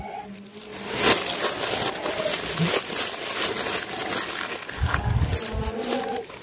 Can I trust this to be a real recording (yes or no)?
yes